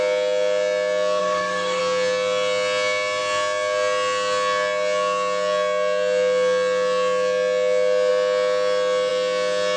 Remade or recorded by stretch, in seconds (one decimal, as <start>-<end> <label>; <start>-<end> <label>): 0.0-1.2 recorded; 1.2-1.8 remade; 1.8-9.8 recorded